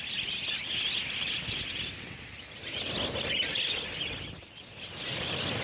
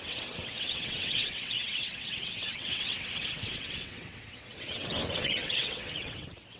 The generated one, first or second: second